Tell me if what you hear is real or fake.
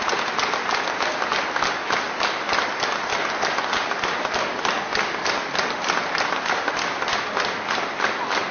real